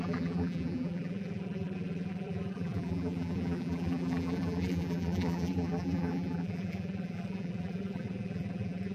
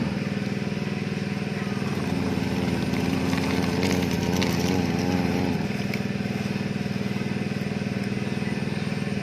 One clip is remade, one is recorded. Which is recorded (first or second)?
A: second